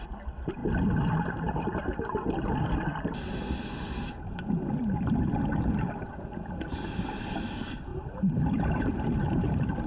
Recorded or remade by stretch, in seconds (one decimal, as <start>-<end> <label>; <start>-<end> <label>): 0.0-7.9 recorded; 7.9-9.9 remade